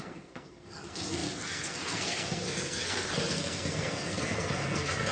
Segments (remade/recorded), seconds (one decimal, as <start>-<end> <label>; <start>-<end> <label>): 0.0-5.1 remade